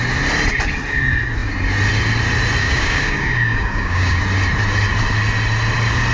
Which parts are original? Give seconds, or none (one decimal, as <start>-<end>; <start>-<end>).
0.0-2.6; 4.2-6.1